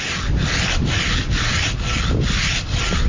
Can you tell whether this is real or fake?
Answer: real